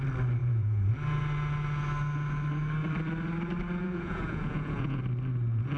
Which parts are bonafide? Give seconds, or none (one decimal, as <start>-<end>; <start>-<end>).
0.0-0.4; 0.9-3.8; 5.0-5.8

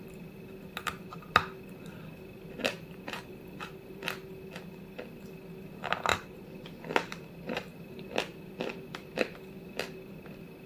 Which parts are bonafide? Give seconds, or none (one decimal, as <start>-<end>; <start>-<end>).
0.0-2.6; 4.3-6.1; 6.6-8.3; 9.0-10.7

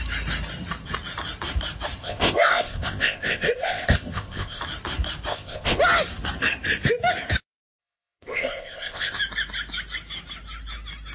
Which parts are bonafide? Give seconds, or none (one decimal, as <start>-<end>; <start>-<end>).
0.0-2.0; 4.6-5.3; 5.8-7.8; 9.2-11.1

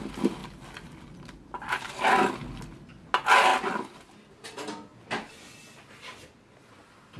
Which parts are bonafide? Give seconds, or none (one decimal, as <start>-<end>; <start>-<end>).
0.0-7.2

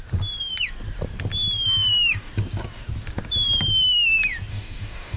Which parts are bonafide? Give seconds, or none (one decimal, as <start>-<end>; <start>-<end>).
0.0-4.5

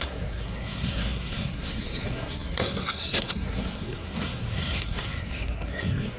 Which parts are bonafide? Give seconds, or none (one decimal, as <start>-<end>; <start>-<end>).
none

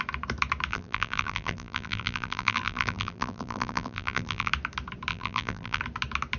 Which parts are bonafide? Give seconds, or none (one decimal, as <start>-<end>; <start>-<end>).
0.0-0.7; 4.5-5.1; 5.8-6.4

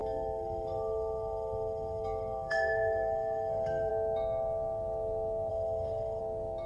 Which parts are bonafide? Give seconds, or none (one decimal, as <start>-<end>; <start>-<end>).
3.9-5.5; 6.2-6.7